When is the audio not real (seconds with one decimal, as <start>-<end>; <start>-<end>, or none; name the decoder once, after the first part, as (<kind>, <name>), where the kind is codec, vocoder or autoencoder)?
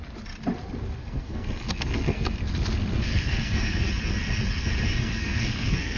1.0-2.4 (codec, SNAC); 3.0-3.9; 4.9-6.0